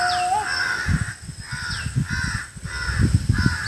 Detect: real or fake real